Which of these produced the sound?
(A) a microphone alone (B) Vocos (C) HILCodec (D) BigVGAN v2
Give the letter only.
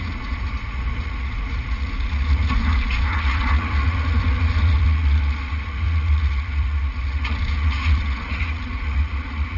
B